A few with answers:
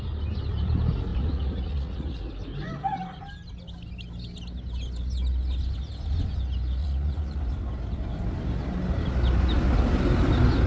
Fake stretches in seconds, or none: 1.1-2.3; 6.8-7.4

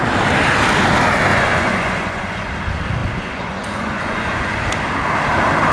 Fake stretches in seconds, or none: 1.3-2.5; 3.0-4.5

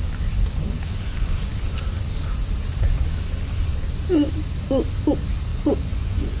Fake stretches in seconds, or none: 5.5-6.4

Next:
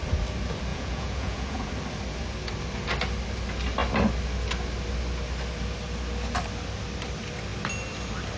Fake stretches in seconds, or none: 0.7-1.7

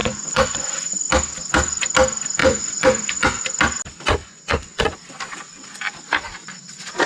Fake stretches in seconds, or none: 0.0-0.9; 2.4-3.4; 4.2-4.9

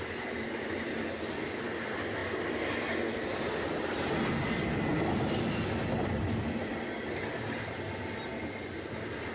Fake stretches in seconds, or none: none

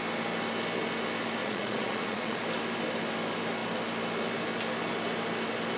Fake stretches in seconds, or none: 1.4-2.4

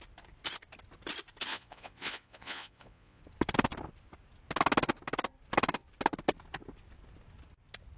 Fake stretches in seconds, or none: 1.5-3.2